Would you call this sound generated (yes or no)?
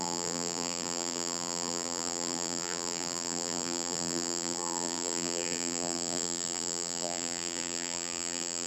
yes